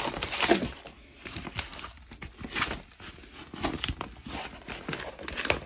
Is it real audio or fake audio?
real